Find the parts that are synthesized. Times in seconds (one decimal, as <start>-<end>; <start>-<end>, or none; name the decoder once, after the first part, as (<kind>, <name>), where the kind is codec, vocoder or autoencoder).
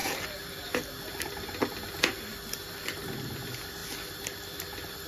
none